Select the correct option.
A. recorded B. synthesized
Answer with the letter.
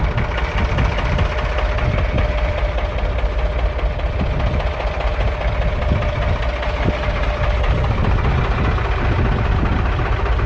A